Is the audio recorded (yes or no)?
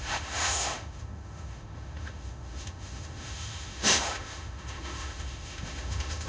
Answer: no